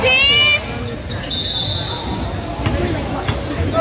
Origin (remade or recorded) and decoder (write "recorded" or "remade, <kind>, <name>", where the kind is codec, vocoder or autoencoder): recorded